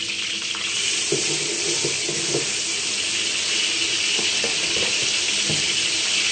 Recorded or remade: recorded